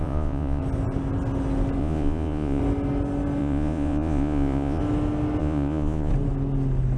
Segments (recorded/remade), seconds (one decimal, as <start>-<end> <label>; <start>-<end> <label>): 0.0-0.6 remade; 0.6-1.8 recorded; 1.8-2.6 remade; 2.6-3.4 recorded; 3.4-4.8 remade; 4.8-5.4 recorded; 5.4-6.1 remade; 6.1-7.0 recorded